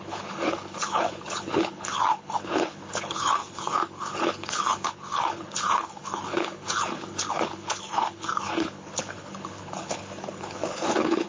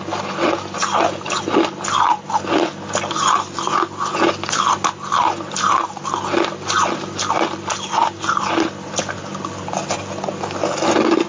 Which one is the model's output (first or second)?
first